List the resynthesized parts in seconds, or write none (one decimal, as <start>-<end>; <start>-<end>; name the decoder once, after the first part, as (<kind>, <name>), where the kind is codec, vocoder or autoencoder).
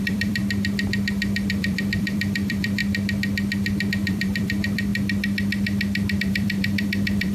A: 0.0-0.4 (vocoder, BigVGAN v2); 1.5-2.8; 3.9-4.9; 6.2-7.3